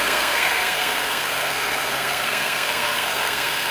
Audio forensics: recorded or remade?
remade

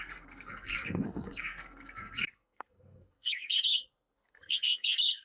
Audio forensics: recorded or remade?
remade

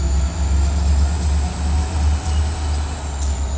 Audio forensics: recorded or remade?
recorded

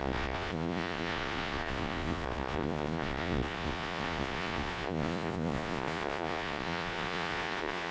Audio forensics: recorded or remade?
remade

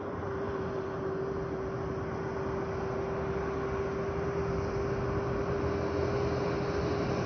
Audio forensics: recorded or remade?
recorded